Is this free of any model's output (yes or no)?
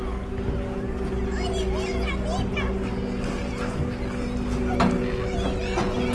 yes